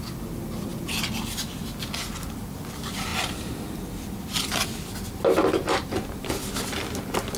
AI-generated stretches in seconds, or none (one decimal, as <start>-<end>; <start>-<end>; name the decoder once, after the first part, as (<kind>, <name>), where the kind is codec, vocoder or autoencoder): none